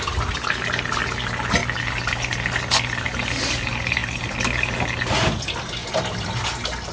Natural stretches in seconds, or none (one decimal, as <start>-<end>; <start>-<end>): 0.0-6.9